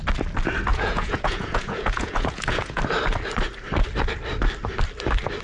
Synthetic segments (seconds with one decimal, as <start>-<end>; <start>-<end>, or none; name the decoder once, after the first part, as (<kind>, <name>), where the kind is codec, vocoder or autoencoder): 0.7-2.8 (vocoder, Vocos)